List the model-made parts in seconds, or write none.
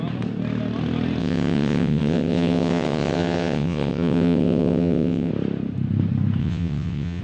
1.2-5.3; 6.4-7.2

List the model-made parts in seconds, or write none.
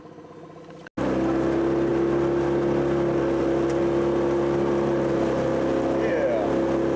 none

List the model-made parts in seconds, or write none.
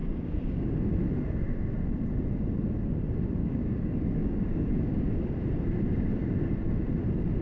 0.0-0.7; 3.4-5.1